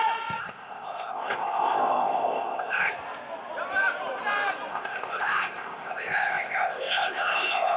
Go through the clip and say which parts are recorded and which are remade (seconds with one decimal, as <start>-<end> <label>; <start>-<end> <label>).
0.0-0.4 recorded; 0.4-2.9 remade; 2.9-4.7 recorded; 4.7-7.8 remade